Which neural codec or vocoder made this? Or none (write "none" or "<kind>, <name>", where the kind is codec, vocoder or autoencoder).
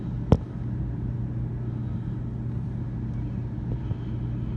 none